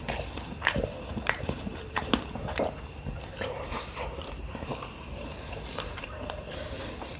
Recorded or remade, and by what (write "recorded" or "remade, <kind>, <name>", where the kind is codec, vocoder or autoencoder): remade, vocoder, BigVGAN v2